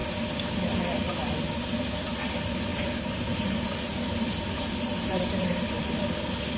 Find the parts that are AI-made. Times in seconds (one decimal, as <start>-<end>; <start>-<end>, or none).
2.7-3.6; 4.9-5.6